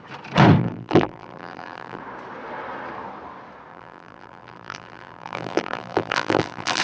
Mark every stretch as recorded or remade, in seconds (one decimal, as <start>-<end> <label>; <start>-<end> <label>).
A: 0.0-0.6 recorded; 0.6-2.0 remade; 2.0-3.7 recorded; 3.7-6.8 remade